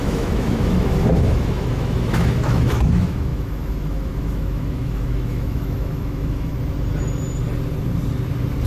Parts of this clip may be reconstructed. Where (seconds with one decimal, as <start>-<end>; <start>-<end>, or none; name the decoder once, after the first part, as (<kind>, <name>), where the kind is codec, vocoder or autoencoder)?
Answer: 0.0-6.5 (autoencoder, DAC-VAE)